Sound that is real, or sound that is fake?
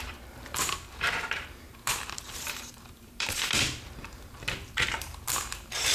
fake